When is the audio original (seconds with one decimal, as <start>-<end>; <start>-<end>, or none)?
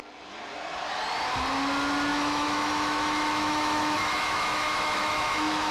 0.0-2.1